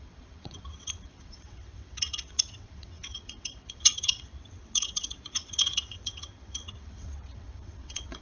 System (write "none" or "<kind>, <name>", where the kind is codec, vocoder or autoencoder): vocoder, WaveNeXt